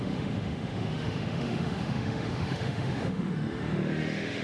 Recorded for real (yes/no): no